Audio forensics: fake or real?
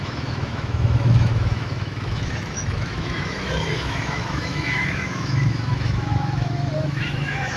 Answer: fake